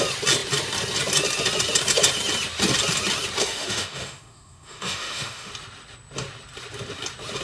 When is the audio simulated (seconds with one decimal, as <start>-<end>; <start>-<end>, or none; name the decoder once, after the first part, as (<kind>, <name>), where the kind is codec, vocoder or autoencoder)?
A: 3.4-5.5 (autoencoder, DAC-VAE)